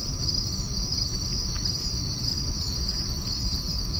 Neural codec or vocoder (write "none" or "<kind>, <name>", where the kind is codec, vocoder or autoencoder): none